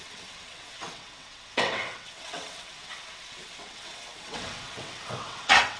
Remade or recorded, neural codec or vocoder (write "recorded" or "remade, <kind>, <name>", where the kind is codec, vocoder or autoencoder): remade, vocoder, WaveNeXt